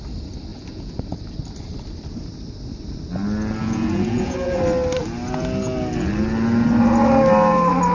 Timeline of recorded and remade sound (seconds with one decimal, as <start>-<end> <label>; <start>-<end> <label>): 0.0-0.5 recorded; 0.5-1.0 remade; 1.0-3.6 recorded; 3.6-4.6 remade; 4.6-7.9 recorded